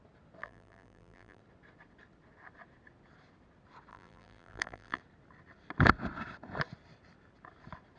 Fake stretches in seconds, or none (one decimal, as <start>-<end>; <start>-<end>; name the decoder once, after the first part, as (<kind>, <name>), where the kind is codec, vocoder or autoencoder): 0.4-1.4 (vocoder, BigVGAN v2); 3.9-5.0